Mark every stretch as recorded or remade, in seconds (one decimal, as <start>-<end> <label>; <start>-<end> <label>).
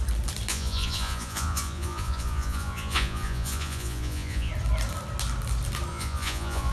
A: 0.0-0.5 recorded; 0.5-4.5 remade; 4.5-5.9 recorded; 5.9-6.7 remade